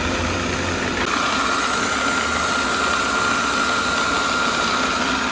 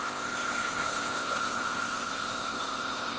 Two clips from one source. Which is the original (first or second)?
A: first